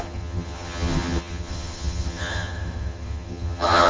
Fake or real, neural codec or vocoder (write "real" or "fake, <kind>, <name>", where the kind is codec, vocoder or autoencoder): fake, vocoder, HiFi-GAN